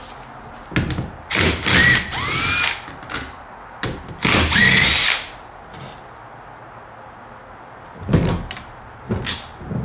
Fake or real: real